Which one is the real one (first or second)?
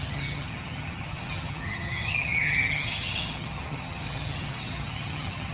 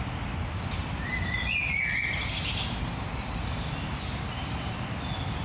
second